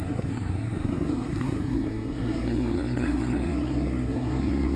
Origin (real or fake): fake